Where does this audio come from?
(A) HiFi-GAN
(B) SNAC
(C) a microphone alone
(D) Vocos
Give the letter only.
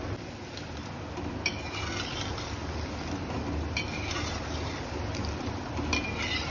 C